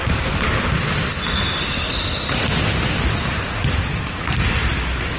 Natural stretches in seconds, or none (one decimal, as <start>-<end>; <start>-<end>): 0.0-5.2